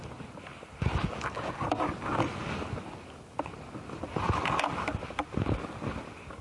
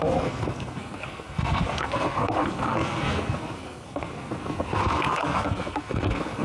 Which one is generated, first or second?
second